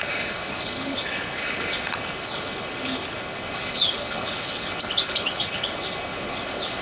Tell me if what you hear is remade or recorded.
remade